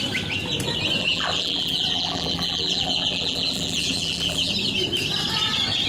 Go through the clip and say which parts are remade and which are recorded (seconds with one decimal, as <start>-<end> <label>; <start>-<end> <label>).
0.0-1.0 recorded; 1.0-4.5 remade; 4.5-5.9 recorded